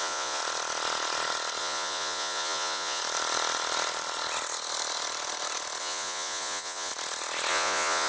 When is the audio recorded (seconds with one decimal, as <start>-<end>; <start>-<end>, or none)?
0.4-1.6; 3.0-5.8; 6.9-7.5